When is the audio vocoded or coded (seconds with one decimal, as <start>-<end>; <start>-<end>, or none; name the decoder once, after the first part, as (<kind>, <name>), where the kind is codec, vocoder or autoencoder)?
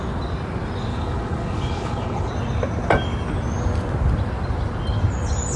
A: 0.9-2.3 (codec, HILCodec)